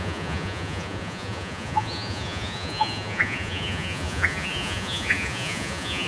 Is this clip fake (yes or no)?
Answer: yes